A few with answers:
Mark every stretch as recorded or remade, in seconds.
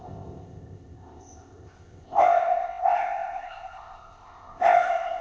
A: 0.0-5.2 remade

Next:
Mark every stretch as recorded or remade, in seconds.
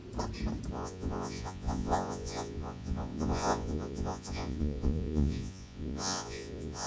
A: 0.0-0.7 recorded; 0.7-6.9 remade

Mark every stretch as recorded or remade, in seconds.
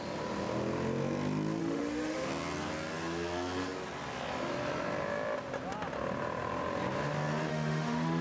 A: 0.0-1.6 recorded; 1.6-2.3 remade; 2.3-7.5 recorded; 7.5-8.2 remade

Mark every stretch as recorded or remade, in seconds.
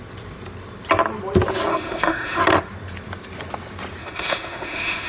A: 0.0-1.7 recorded; 1.7-2.4 remade; 2.4-4.0 recorded; 4.0-5.1 remade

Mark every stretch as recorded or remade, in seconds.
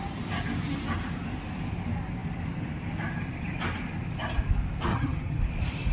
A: 0.0-4.9 recorded; 4.9-5.4 remade; 5.4-5.9 recorded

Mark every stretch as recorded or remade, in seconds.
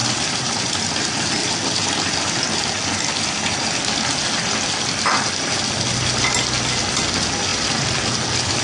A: 0.0-0.6 remade; 0.6-1.4 recorded; 1.4-1.9 remade; 1.9-8.6 recorded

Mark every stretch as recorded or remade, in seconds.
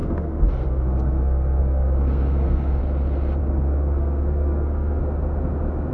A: 0.0-2.8 remade; 2.8-3.4 recorded; 3.4-5.0 remade; 5.0-5.9 recorded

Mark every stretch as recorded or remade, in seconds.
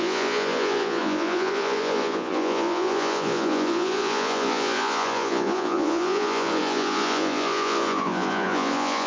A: 0.0-9.1 remade